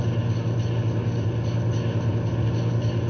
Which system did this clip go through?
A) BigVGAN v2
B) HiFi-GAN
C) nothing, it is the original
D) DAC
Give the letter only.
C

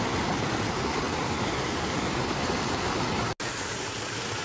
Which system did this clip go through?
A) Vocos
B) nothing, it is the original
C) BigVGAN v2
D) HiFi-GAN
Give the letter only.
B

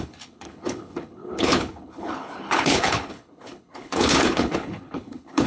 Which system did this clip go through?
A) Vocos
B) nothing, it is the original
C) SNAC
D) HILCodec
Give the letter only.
D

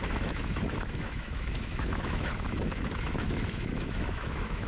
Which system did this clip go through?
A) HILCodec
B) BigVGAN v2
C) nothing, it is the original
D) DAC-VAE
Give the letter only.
D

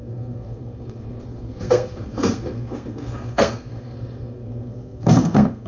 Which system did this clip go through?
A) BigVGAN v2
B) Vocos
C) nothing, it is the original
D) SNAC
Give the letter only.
D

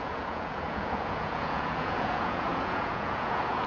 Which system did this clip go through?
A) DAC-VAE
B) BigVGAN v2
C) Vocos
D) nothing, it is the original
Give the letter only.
C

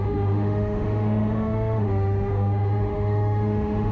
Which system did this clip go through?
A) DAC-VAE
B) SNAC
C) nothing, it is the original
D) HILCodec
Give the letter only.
A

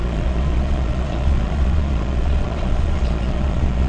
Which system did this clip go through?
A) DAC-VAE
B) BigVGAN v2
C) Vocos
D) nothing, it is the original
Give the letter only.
C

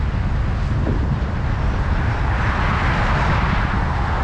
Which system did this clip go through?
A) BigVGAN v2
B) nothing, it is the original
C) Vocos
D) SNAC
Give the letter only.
B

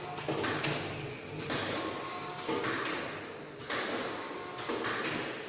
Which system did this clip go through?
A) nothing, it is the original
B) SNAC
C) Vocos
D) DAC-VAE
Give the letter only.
A